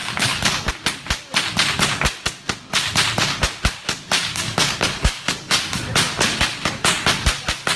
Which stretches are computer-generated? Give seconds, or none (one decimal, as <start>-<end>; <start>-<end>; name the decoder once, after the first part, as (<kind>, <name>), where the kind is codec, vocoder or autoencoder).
0.0-0.7 (codec, DAC); 4.2-5.6